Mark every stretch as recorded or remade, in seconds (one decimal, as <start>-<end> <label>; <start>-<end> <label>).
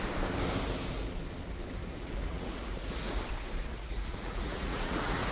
0.0-1.8 recorded; 1.8-3.2 remade; 3.2-3.7 recorded; 3.7-5.3 remade